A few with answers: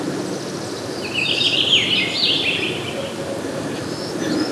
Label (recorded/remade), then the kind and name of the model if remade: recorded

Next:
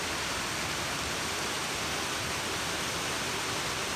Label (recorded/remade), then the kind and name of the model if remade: recorded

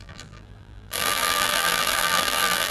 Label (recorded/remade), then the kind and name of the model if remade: remade, vocoder, BigVGAN v2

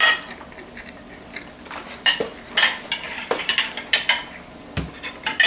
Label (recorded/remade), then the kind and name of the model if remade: recorded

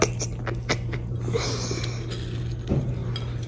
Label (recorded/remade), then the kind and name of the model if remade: recorded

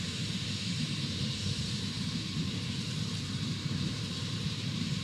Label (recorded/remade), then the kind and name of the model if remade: remade, vocoder, BigVGAN v2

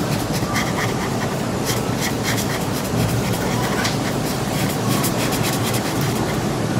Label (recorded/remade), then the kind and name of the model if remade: remade, vocoder, BigVGAN v2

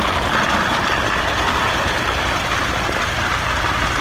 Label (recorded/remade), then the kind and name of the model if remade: recorded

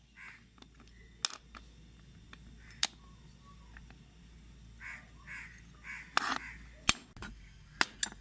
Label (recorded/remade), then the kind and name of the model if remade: recorded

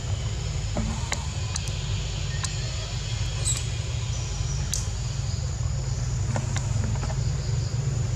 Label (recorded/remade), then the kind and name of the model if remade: recorded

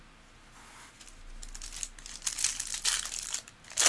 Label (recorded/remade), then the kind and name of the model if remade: recorded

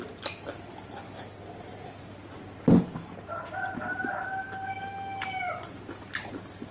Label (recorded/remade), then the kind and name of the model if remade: recorded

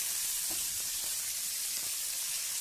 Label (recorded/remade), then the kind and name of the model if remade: remade, vocoder, BigVGAN v2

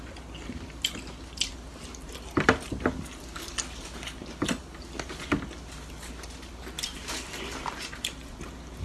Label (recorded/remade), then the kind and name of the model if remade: recorded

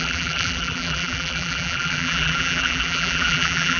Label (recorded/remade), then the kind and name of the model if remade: remade, vocoder, BigVGAN v2